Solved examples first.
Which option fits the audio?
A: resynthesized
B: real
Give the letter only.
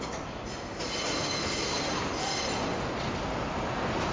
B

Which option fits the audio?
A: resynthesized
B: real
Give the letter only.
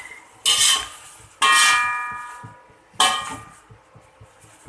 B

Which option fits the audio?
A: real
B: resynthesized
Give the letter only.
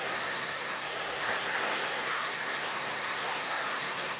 B